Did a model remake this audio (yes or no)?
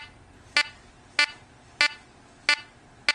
no